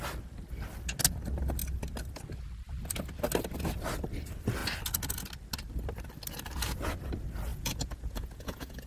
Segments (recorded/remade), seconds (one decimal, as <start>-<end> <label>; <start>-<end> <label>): 0.0-7.5 recorded; 7.5-8.9 remade